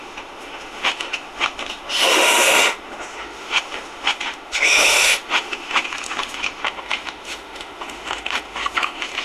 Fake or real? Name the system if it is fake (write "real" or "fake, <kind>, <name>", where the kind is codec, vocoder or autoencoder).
fake, autoencoder, DAC-VAE